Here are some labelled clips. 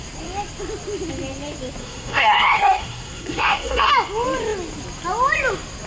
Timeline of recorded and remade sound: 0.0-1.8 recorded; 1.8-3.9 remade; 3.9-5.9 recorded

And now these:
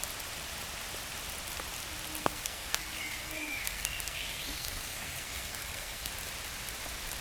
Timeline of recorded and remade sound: 0.0-2.2 recorded; 2.2-6.1 remade; 6.1-7.2 recorded

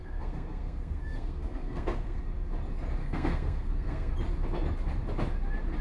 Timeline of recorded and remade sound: 0.0-2.2 remade; 2.2-3.0 recorded; 3.0-4.1 remade; 4.1-5.8 recorded

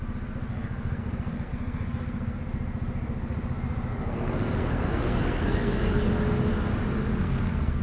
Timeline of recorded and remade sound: 0.0-0.5 recorded; 0.5-2.4 remade; 2.4-3.9 recorded; 3.9-6.1 remade; 6.1-7.2 recorded; 7.2-7.8 remade

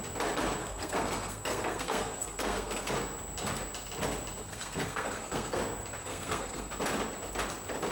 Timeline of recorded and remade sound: 0.0-0.6 recorded; 0.6-2.9 remade; 2.9-4.4 recorded; 4.4-5.6 remade; 5.6-6.0 recorded; 6.0-6.7 remade; 6.7-7.9 recorded

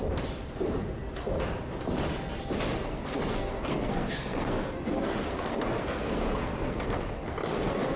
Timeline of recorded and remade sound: 0.0-2.9 recorded; 2.9-8.0 remade

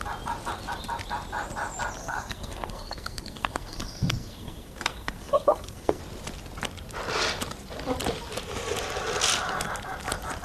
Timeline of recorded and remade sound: 0.0-2.0 recorded; 2.0-6.0 remade; 6.0-10.4 recorded

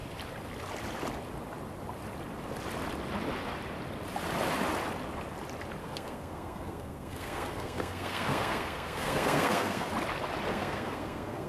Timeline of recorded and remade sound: 0.0-5.8 recorded; 5.8-9.9 remade; 9.9-10.5 recorded; 10.5-11.5 remade